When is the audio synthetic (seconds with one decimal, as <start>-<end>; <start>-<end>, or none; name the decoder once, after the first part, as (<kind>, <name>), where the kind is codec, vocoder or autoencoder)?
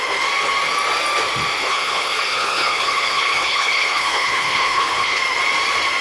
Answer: 1.6-5.2 (codec, HILCodec)